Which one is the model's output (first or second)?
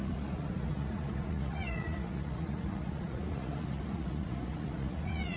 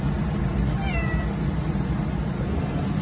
first